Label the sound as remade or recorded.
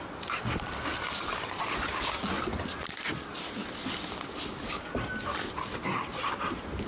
recorded